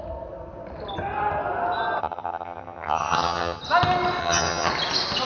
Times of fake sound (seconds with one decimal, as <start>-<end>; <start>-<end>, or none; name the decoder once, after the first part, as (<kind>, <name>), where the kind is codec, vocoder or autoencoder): 2.0-3.6 (vocoder, HiFi-GAN); 4.2-4.7